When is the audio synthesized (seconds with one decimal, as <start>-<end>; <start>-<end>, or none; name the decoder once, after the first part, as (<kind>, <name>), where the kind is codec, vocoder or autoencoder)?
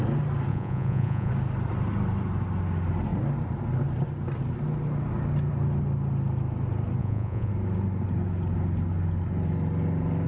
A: 0.5-1.3 (vocoder, Vocos); 7.0-7.5